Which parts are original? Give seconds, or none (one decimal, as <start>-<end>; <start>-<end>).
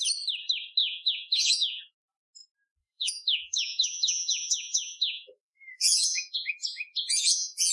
0.0-0.8; 2.0-2.8